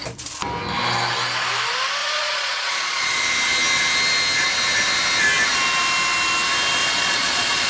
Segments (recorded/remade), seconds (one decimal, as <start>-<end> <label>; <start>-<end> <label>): 0.0-2.0 recorded; 2.0-3.2 remade; 3.2-6.8 recorded; 6.8-7.7 remade